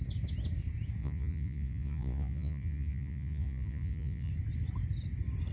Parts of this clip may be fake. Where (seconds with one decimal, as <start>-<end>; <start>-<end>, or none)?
1.0-4.3